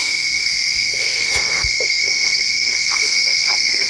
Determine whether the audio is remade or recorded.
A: remade